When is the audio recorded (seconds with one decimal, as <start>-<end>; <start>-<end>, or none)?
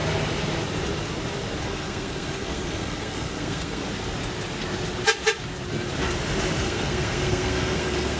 0.0-1.6; 3.8-6.6